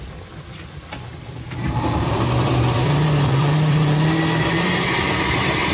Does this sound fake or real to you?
fake